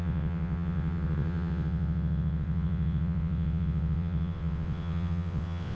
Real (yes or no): no